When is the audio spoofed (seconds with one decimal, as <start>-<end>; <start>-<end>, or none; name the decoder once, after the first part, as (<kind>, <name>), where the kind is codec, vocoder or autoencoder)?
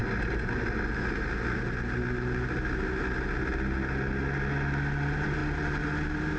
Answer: none